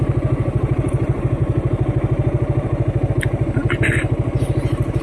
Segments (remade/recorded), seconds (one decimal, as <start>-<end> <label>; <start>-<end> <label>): 0.0-5.0 recorded